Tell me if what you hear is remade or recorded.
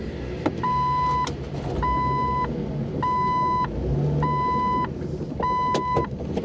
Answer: recorded